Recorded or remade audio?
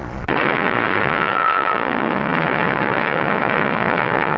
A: remade